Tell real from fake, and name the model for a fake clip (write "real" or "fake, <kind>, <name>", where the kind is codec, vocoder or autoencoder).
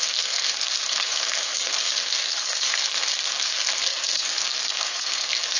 fake, codec, SNAC